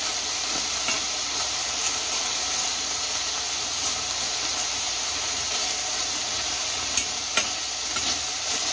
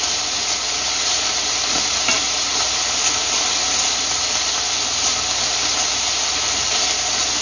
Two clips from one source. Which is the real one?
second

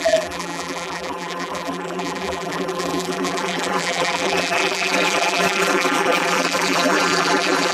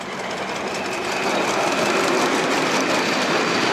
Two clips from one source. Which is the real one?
second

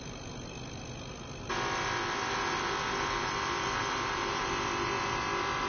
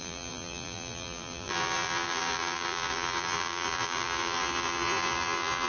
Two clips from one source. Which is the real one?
first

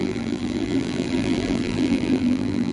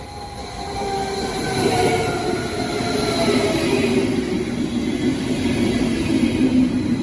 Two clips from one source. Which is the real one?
second